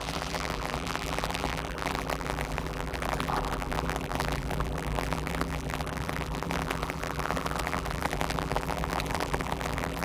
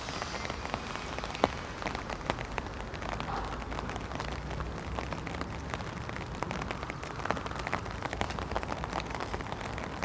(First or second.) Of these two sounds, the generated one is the first